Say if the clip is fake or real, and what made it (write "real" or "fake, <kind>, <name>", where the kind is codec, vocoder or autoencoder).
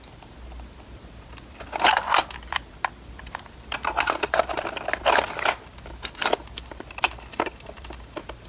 real